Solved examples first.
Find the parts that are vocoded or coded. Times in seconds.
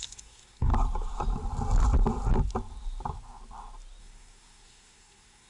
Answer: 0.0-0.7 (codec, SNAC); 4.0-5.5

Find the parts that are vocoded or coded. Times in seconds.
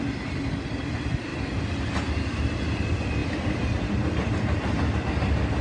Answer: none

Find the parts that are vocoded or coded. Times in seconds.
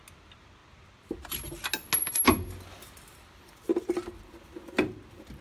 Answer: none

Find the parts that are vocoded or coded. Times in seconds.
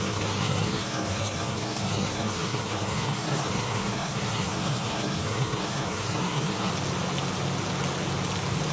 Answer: 0.0-6.7 (codec, SNAC)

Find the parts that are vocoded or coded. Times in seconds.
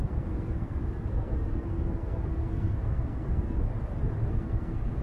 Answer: 0.0-3.7 (codec, SNAC); 4.3-5.0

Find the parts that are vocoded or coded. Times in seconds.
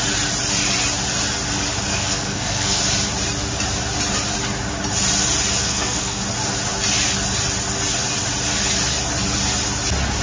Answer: 1.9-2.8 (codec, SNAC); 5.6-6.2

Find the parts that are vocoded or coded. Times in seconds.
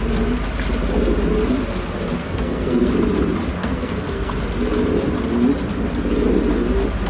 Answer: 2.2-2.9 (codec, SNAC); 3.6-4.3